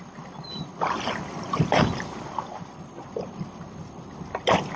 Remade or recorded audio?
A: recorded